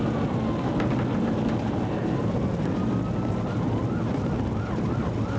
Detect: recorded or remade recorded